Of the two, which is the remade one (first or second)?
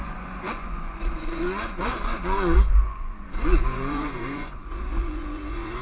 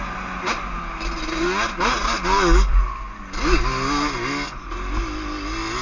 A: first